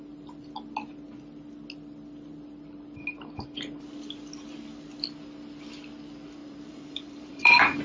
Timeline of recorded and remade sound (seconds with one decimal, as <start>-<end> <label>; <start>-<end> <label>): 0.0-6.4 recorded; 6.4-7.8 remade